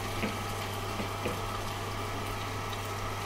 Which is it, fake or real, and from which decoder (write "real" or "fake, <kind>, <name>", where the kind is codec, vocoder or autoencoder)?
real